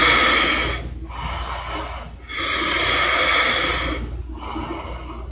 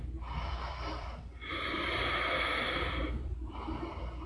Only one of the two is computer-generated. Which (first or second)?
second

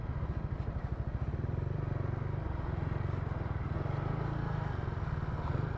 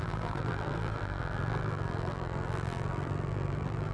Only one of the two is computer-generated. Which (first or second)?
second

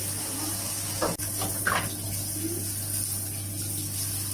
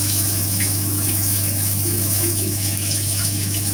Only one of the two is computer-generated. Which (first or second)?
second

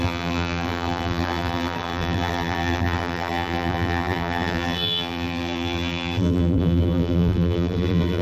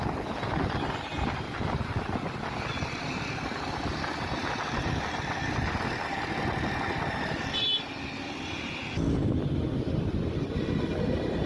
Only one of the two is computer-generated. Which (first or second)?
first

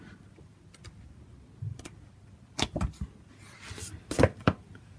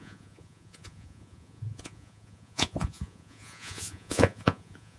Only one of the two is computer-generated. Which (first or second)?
second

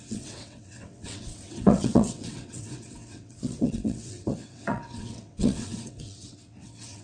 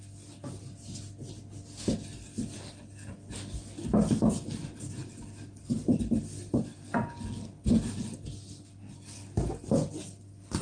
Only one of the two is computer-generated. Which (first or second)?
first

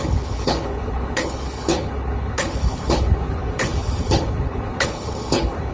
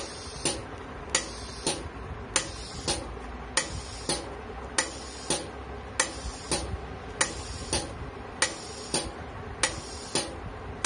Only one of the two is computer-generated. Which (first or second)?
first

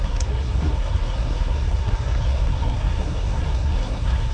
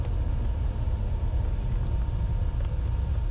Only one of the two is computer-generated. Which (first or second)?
first